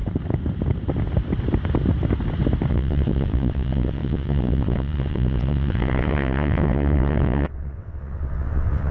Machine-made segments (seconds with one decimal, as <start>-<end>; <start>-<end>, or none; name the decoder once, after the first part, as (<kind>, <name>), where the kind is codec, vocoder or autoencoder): 2.7-8.9 (vocoder, WaveNeXt)